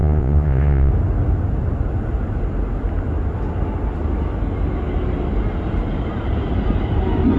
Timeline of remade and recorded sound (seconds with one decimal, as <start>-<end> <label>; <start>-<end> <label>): 0.0-0.9 remade; 0.9-7.4 recorded